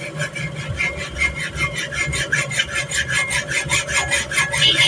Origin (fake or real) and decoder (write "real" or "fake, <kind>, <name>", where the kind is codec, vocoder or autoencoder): real